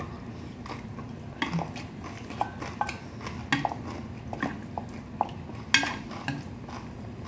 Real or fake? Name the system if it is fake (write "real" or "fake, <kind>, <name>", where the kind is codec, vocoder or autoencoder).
real